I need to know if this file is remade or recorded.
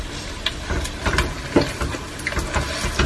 recorded